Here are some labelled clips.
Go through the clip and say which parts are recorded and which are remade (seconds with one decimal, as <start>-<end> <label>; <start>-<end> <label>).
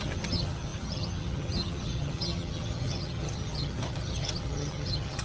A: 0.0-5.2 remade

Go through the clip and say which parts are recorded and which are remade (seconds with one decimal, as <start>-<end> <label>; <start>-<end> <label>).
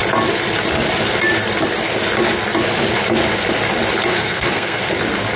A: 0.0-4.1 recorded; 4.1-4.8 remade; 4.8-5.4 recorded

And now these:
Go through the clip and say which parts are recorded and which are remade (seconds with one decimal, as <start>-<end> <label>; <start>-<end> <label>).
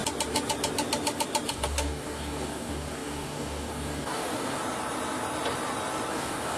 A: 0.0-1.5 recorded; 1.5-4.6 remade; 4.6-6.1 recorded; 6.1-6.6 remade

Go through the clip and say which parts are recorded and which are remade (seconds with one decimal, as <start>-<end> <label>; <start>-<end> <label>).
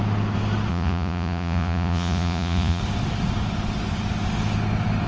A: 0.0-0.7 recorded; 0.7-2.8 remade; 2.8-5.1 recorded